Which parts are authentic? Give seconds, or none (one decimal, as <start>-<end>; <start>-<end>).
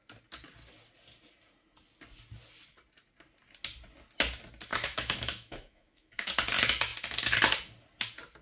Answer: 0.0-4.7; 6.3-8.4